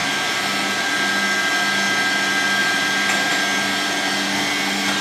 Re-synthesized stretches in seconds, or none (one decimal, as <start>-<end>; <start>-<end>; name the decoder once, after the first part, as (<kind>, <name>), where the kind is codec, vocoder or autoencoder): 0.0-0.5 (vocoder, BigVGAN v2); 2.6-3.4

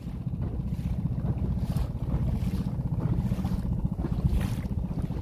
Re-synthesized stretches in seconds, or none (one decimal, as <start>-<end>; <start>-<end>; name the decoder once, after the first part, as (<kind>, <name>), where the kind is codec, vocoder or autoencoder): none

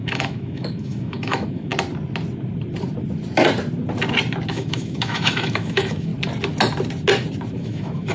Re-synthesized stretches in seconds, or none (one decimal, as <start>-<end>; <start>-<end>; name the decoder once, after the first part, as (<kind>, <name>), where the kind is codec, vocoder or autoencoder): 0.0-1.7 (autoencoder, DAC-VAE); 4.5-6.1; 7.5-8.1

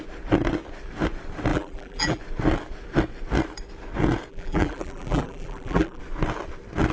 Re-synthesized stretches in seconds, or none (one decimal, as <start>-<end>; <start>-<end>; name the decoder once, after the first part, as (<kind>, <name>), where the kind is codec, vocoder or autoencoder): 1.5-2.2 (vocoder, BigVGAN v2); 4.3-6.0

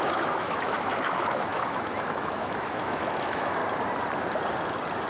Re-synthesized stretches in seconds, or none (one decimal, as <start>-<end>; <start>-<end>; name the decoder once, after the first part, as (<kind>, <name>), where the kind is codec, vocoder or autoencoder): 0.0-3.6 (autoencoder, DAC-VAE)

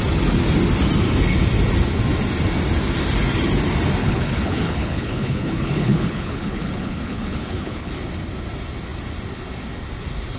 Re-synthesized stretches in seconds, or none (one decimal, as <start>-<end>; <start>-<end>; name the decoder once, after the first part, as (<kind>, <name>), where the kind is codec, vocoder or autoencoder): 4.0-7.9 (codec, HILCodec)

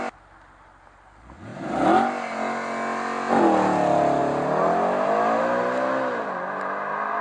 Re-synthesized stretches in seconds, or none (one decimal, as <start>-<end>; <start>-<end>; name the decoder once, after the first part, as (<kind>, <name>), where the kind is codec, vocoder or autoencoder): none